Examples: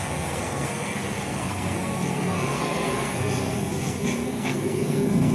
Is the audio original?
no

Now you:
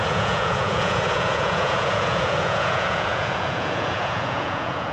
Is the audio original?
no